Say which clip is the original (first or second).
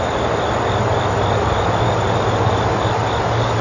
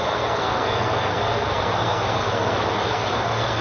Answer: first